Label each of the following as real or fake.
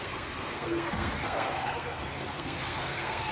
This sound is fake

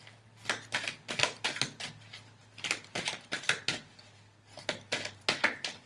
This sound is real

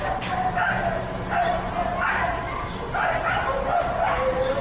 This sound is real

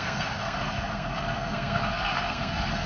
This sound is fake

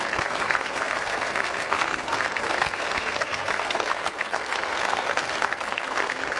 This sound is fake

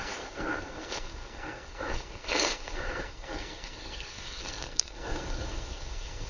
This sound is fake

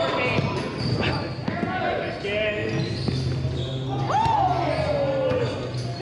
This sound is real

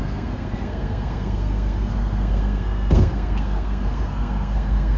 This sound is fake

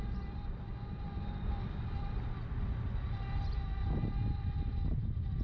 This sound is real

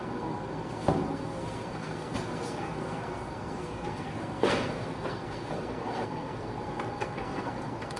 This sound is fake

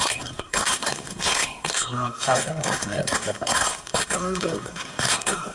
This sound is fake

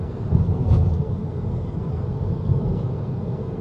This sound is fake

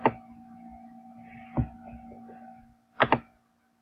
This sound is real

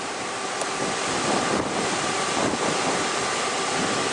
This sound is real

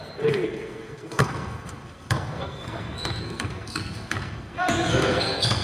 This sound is fake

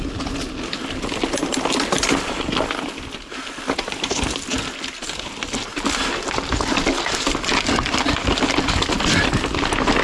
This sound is real